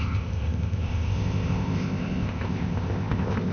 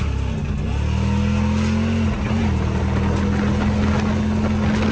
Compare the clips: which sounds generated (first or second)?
first